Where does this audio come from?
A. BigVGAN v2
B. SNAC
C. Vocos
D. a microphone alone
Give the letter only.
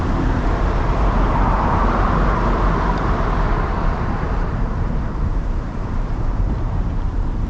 A